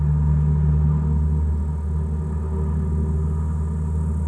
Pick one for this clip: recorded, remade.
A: recorded